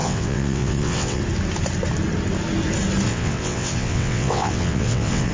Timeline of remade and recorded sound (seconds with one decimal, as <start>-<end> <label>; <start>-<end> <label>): 0.0-1.2 remade; 1.2-3.1 recorded; 3.1-5.3 remade